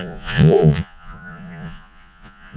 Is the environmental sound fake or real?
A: fake